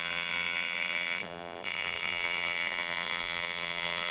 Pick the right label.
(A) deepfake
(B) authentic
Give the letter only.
A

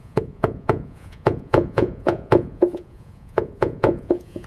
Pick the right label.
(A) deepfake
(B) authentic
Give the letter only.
A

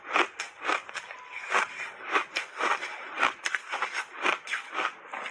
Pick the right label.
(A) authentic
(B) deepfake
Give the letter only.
A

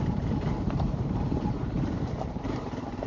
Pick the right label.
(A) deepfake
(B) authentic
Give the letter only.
A